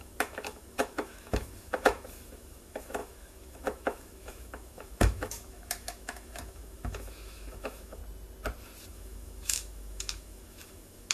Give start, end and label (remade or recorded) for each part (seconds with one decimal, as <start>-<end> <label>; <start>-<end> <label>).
0.0-8.0 remade; 8.0-8.9 recorded; 8.9-11.1 remade